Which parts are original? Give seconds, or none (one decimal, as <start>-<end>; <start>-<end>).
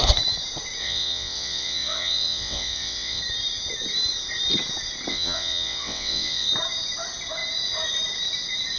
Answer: 0.0-0.8; 3.2-5.1; 6.5-8.8